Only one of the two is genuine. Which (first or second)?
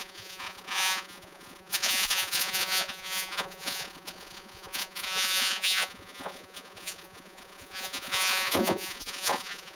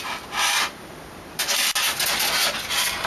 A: second